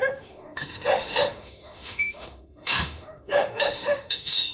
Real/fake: fake